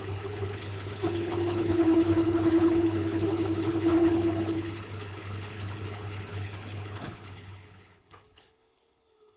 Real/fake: fake